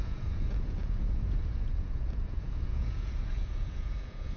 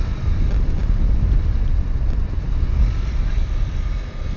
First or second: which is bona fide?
second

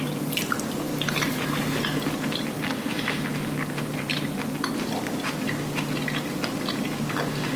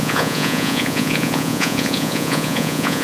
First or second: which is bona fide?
first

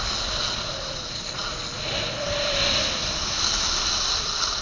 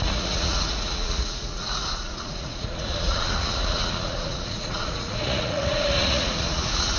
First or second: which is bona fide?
first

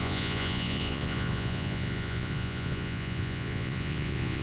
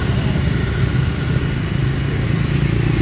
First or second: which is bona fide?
second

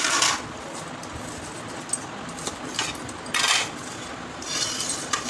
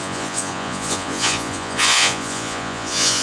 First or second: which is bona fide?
first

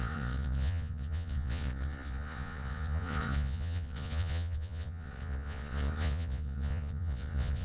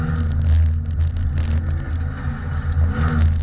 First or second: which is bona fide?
second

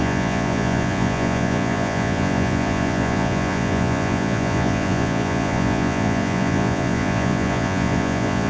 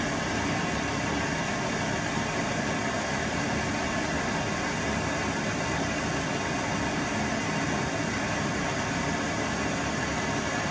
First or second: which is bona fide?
second